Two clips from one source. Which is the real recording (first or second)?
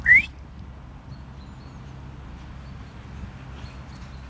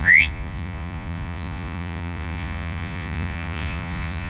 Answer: first